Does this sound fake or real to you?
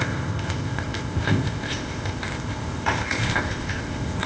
fake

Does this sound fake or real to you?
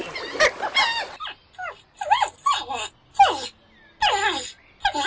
real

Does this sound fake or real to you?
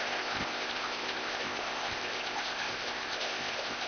fake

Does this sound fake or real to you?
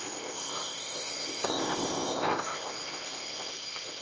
fake